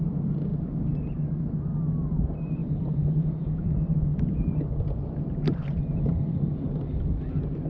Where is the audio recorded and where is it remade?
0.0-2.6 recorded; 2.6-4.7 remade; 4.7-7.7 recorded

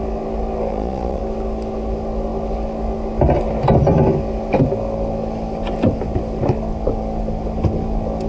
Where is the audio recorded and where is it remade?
0.0-0.7 recorded; 0.7-1.2 remade; 1.2-8.3 recorded

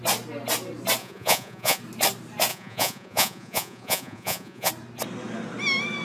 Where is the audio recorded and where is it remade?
0.0-1.0 recorded; 1.0-1.8 remade; 1.8-2.5 recorded; 2.5-4.7 remade; 4.7-6.0 recorded

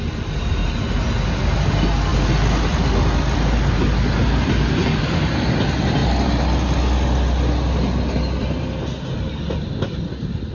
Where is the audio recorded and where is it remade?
0.0-10.5 recorded

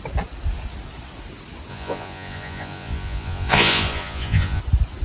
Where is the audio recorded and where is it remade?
0.0-1.7 recorded; 1.7-4.6 remade; 4.6-5.0 recorded

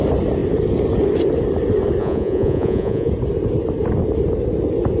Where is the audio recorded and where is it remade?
0.0-2.0 recorded; 2.0-3.1 remade; 3.1-5.0 recorded

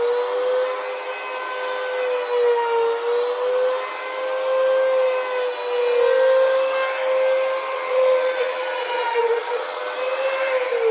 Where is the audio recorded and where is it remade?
0.0-7.7 recorded; 7.7-9.8 remade; 9.8-10.9 recorded

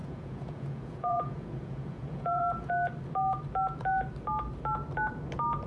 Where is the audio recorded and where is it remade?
0.0-2.7 remade; 2.7-5.7 recorded